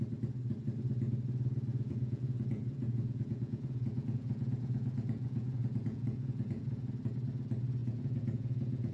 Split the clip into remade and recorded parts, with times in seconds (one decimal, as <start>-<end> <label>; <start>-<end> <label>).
0.0-1.7 recorded; 1.7-6.9 remade; 6.9-7.8 recorded; 7.8-8.9 remade